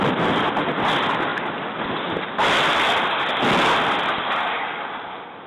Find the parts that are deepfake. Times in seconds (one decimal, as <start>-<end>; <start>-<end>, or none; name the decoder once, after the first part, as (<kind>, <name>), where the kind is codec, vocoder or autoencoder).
none